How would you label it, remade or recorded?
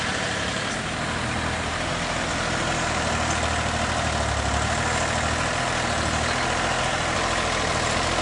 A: recorded